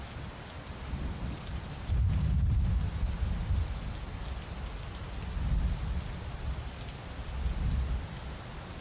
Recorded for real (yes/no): yes